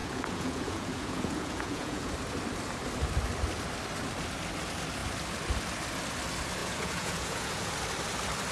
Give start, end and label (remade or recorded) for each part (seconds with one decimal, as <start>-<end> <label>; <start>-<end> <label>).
0.0-2.1 remade; 2.1-6.6 recorded; 6.6-7.7 remade; 7.7-8.5 recorded